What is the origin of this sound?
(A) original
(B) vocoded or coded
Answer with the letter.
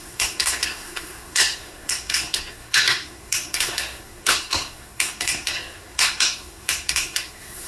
B